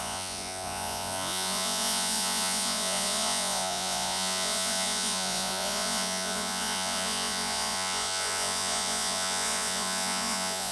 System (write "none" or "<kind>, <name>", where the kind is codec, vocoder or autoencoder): vocoder, Vocos